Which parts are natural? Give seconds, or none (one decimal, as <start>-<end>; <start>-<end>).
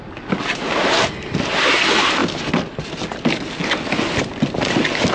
0.0-5.1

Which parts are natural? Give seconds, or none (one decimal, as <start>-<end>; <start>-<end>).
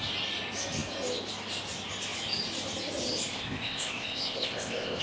0.0-3.3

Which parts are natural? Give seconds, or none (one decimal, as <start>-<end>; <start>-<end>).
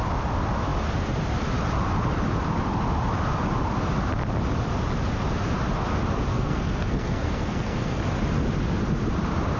0.0-6.3; 8.0-9.6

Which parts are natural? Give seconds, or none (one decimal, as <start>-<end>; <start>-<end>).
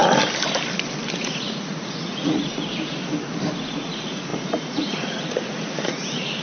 0.0-1.2; 3.0-3.6